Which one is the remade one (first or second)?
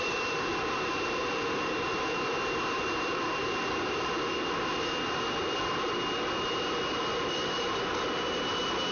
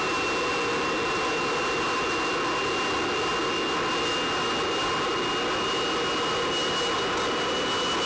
first